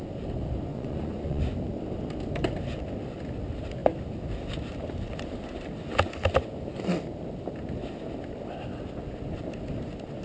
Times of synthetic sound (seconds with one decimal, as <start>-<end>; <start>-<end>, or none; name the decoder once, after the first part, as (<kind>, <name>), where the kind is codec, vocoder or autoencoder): 0.7-1.4 (vocoder, Vocos)